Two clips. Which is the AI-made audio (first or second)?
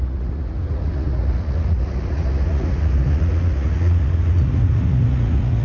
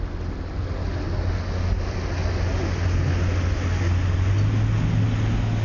first